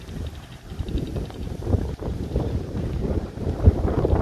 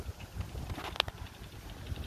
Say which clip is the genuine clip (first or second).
second